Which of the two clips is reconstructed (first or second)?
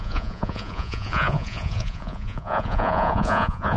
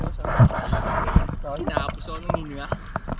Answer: first